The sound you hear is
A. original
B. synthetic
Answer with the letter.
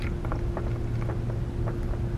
A